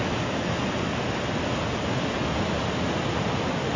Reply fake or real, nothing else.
real